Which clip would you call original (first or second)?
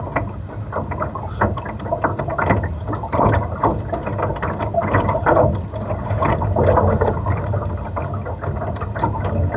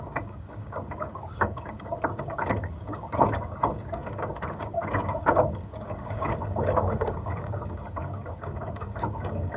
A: first